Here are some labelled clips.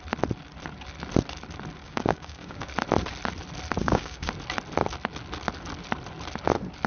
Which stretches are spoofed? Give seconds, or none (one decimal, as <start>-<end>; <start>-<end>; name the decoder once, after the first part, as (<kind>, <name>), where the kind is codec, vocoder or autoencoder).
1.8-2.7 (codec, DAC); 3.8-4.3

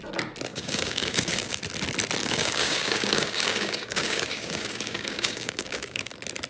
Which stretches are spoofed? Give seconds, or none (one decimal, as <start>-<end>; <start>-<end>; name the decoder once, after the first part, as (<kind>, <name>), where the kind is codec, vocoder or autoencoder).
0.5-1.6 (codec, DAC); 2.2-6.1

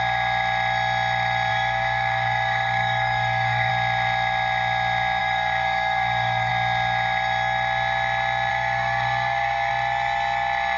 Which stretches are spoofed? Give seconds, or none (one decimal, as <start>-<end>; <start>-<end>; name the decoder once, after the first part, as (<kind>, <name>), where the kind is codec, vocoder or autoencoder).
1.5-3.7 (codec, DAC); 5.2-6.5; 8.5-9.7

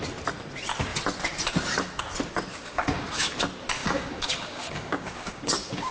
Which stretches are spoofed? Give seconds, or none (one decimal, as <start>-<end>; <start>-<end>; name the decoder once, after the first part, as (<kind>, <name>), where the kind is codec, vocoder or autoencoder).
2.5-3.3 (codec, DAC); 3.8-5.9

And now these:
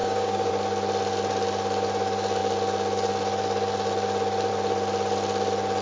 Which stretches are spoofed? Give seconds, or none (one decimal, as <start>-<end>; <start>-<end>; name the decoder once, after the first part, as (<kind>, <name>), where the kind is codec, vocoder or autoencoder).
0.0-0.5 (codec, DAC)

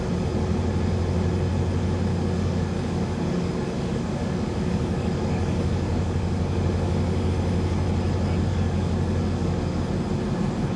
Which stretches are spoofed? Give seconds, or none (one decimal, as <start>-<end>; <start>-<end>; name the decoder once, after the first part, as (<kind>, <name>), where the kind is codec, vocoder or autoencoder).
2.1-7.3 (codec, DAC); 8.5-9.8

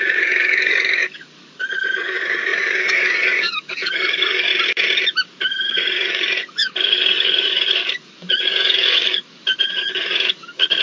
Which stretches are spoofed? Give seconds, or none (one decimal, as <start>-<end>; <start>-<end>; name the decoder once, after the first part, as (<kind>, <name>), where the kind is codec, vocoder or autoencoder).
0.0-4.5 (codec, DAC); 5.5-10.8

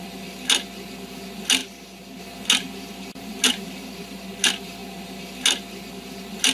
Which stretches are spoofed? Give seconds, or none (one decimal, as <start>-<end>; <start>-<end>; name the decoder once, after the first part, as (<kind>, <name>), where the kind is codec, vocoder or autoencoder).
none